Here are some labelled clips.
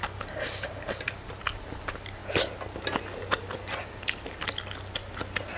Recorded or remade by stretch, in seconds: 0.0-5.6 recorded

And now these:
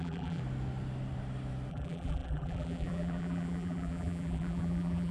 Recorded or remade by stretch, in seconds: 0.0-0.4 remade; 0.4-1.7 recorded; 1.7-5.1 remade